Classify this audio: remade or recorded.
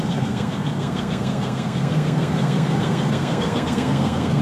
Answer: remade